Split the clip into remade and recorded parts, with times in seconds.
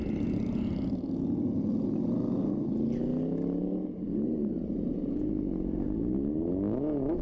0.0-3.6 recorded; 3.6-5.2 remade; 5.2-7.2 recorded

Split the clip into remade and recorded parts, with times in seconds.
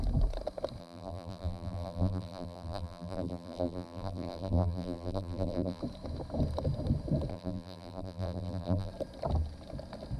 0.0-0.8 recorded; 0.8-5.8 remade; 5.8-7.3 recorded; 7.3-8.9 remade; 8.9-10.2 recorded